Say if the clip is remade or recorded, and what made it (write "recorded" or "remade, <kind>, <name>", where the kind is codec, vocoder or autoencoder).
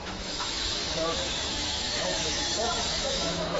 remade, autoencoder, DAC-VAE